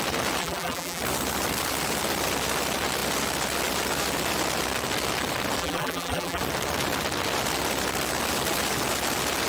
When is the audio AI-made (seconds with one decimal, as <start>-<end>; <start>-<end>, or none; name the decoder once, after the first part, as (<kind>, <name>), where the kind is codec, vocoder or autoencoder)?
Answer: 0.4-1.0 (vocoder, BigVGAN v2); 5.6-6.4